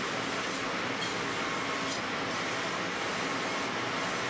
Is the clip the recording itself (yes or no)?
yes